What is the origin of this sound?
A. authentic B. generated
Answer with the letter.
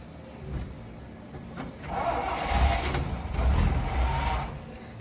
A